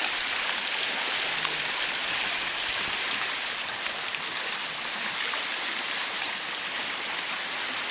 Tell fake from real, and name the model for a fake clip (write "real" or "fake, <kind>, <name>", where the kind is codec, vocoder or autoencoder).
real